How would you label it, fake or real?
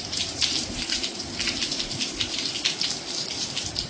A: fake